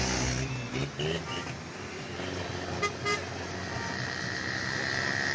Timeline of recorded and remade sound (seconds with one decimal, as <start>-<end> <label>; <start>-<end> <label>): 0.0-3.1 recorded; 3.1-4.8 remade; 4.8-5.3 recorded